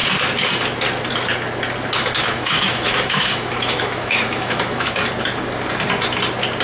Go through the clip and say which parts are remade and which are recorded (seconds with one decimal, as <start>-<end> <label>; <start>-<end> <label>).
0.0-2.0 recorded; 2.0-4.9 remade; 4.9-6.6 recorded